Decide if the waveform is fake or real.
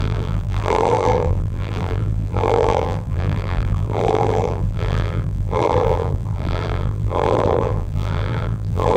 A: fake